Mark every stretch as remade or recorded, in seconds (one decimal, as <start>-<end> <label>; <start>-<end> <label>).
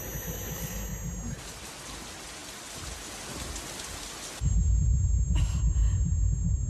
0.0-6.7 recorded